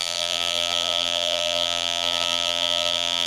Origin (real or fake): fake